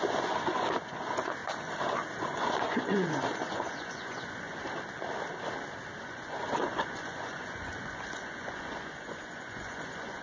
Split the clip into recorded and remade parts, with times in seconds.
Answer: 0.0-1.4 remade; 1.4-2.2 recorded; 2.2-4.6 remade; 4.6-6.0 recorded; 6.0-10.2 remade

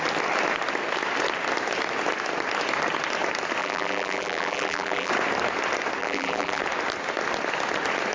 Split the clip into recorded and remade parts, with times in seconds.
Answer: 0.0-3.6 recorded; 3.6-5.1 remade; 5.1-6.0 recorded; 6.0-6.6 remade; 6.6-8.1 recorded

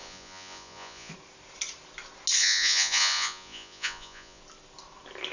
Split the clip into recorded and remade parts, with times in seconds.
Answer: 0.0-1.1 remade; 1.1-2.4 recorded; 2.4-4.4 remade; 4.4-5.3 recorded

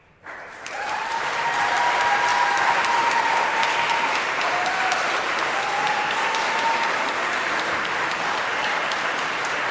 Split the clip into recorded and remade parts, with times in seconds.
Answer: 0.0-4.7 remade; 4.7-5.3 recorded; 5.3-9.7 remade

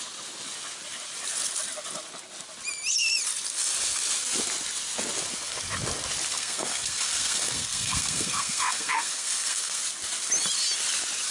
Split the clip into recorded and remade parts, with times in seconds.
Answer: 0.0-6.3 recorded; 6.3-9.8 remade; 9.8-11.3 recorded

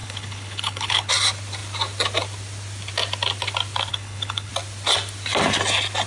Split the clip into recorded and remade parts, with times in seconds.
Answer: 0.0-1.1 remade; 1.1-3.9 recorded; 3.9-4.5 remade; 4.5-6.1 recorded

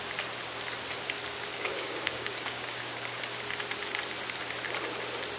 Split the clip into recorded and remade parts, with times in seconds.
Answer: 0.0-1.5 recorded; 1.5-3.2 remade; 3.2-5.4 recorded